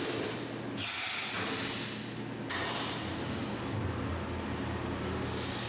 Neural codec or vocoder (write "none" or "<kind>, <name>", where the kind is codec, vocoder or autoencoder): none